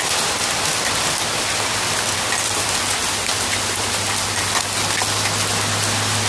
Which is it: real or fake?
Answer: real